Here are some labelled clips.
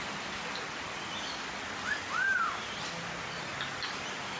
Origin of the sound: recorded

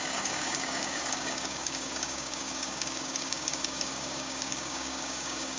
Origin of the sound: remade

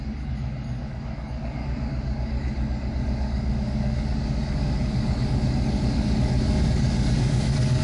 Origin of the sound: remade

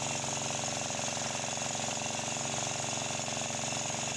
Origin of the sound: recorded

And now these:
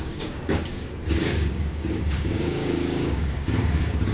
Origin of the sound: remade